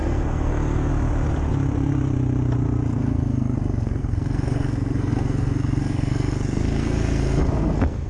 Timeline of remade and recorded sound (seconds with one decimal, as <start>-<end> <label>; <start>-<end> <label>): 0.0-0.9 remade; 0.9-2.9 recorded; 2.9-8.1 remade